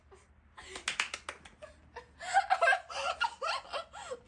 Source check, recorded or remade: recorded